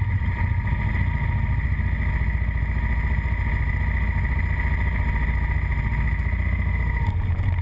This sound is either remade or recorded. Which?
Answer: recorded